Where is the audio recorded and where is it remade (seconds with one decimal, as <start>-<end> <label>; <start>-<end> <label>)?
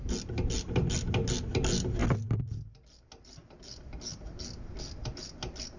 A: 0.0-5.8 recorded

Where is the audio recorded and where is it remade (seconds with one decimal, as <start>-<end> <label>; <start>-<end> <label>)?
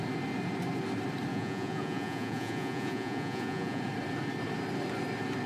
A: 0.0-1.3 recorded; 1.3-3.8 remade; 3.8-5.5 recorded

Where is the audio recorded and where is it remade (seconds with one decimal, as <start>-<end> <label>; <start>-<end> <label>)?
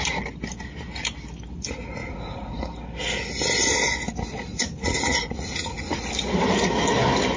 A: 0.0-2.0 recorded; 2.0-2.6 remade; 2.6-4.5 recorded; 4.5-6.0 remade; 6.0-7.4 recorded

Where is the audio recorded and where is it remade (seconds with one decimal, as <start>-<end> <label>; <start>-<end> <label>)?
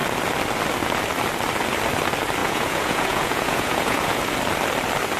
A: 0.0-2.4 recorded; 2.4-4.2 remade; 4.2-5.2 recorded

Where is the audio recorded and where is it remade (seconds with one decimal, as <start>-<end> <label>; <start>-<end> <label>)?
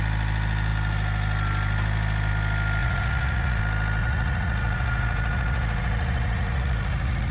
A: 0.0-2.8 recorded; 2.8-3.6 remade; 3.6-4.0 recorded; 4.0-7.3 remade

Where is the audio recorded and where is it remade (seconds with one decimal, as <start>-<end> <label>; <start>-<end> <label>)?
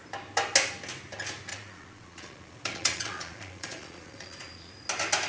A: 0.0-1.5 recorded; 1.5-4.7 remade; 4.7-5.3 recorded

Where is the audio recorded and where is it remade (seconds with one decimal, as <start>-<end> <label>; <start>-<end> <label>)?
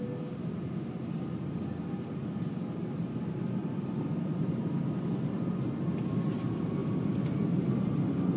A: 0.0-8.4 recorded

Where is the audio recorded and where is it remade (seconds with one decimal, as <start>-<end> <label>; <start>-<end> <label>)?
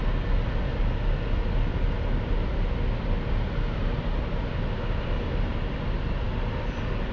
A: 0.0-7.1 recorded